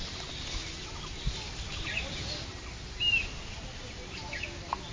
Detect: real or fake real